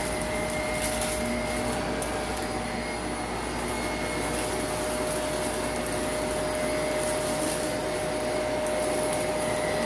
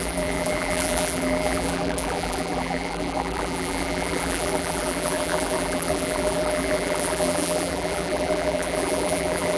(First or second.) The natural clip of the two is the first